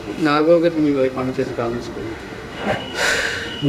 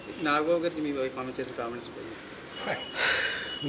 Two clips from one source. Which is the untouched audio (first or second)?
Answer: second